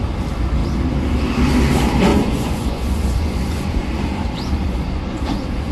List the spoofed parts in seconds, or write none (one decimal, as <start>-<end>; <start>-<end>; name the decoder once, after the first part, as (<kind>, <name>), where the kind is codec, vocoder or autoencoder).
2.1-5.7 (vocoder, Vocos)